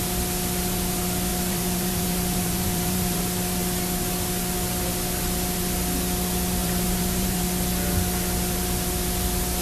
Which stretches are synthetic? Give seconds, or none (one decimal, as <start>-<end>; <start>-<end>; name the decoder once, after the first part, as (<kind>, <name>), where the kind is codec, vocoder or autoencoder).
1.3-3.2 (vocoder, BigVGAN v2); 6.6-7.4